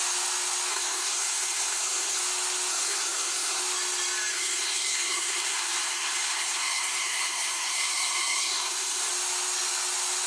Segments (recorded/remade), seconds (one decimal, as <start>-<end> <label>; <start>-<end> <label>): 0.0-0.7 recorded; 0.7-2.2 remade; 2.2-2.7 recorded; 2.7-3.6 remade; 3.6-4.3 recorded; 4.3-9.0 remade; 9.0-10.3 recorded